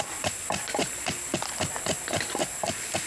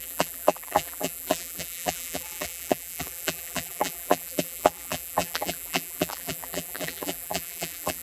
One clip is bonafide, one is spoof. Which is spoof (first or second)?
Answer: second